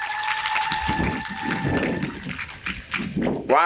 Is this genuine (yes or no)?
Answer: yes